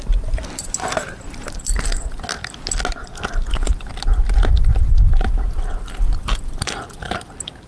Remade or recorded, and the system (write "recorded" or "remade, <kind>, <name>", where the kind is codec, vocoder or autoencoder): recorded